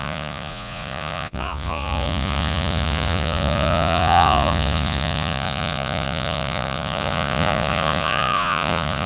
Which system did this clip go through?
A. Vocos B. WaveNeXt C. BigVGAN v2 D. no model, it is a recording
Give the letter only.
A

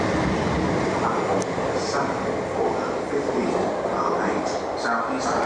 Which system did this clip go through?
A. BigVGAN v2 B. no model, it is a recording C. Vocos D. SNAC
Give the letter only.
B